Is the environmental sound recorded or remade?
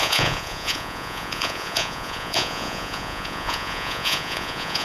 remade